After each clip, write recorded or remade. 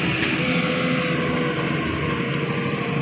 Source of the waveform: recorded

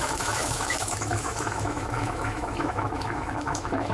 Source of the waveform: remade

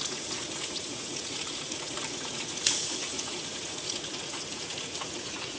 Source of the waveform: remade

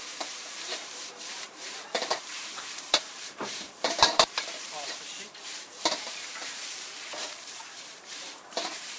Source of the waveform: remade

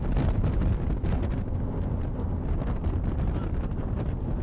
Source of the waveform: recorded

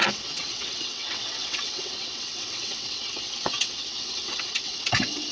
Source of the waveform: remade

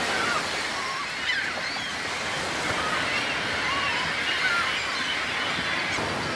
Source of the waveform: recorded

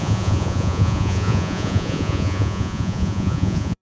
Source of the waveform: remade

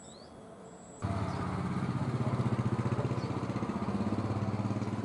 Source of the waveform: recorded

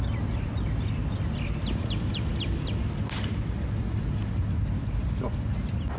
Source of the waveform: recorded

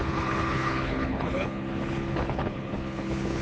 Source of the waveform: remade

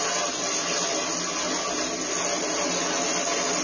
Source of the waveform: recorded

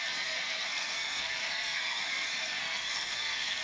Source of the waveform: remade